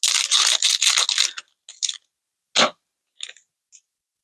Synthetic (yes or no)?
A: no